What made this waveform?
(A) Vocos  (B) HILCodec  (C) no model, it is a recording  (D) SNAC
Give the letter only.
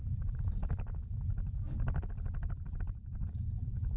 C